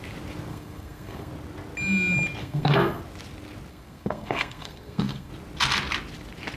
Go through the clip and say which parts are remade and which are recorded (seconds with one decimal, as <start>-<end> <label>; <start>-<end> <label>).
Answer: 0.0-0.5 recorded; 0.5-1.3 remade; 1.3-2.4 recorded; 2.4-3.0 remade; 3.0-3.7 recorded; 3.7-5.3 remade; 5.3-6.6 recorded

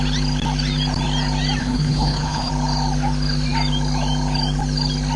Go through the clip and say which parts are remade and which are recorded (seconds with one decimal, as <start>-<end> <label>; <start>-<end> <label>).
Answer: 0.0-1.6 recorded; 1.6-2.5 remade; 2.5-5.2 recorded

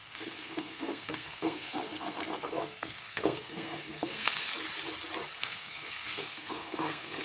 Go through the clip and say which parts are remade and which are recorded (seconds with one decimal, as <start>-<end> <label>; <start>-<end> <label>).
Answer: 0.0-4.5 remade; 4.5-5.4 recorded; 5.4-7.2 remade

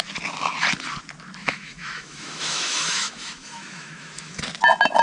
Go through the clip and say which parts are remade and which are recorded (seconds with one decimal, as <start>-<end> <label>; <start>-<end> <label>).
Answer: 0.0-1.4 recorded; 1.4-4.4 remade; 4.4-5.0 recorded

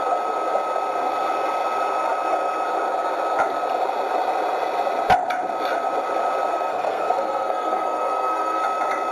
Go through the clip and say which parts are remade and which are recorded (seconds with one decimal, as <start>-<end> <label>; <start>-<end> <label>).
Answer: 0.0-6.5 recorded; 6.5-8.6 remade; 8.6-9.1 recorded